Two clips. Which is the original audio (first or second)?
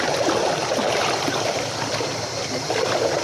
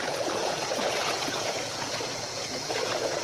first